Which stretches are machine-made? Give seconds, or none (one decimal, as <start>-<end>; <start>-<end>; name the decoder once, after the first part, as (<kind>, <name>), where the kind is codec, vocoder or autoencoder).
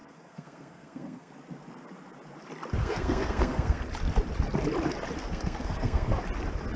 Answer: 0.0-1.3 (codec, SNAC); 2.8-3.8; 5.2-6.2